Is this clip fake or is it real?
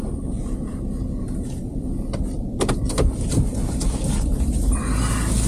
fake